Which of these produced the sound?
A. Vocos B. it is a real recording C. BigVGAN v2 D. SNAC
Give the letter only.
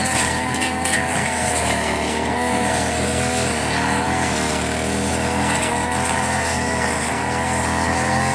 D